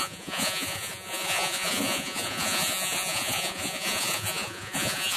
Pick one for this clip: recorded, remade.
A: remade